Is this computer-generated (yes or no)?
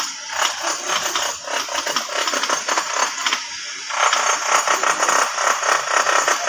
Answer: no